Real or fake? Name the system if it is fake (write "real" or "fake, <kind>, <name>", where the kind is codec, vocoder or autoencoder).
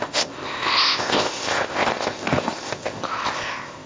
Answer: fake, codec, ZipCodec